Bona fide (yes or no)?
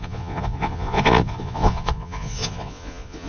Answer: no